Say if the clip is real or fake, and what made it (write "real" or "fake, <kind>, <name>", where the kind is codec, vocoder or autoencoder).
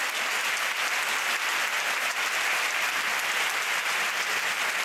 fake, vocoder, BigVGAN v2